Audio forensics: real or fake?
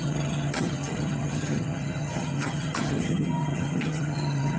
fake